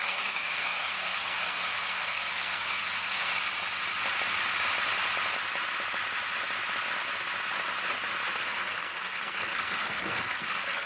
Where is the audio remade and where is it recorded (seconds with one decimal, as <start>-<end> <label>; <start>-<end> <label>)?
0.0-3.3 remade; 3.3-8.4 recorded; 8.4-10.9 remade